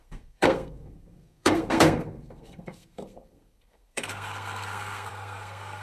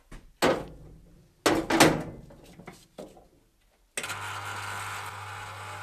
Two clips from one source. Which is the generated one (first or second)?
first